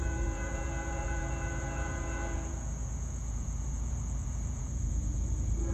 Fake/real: fake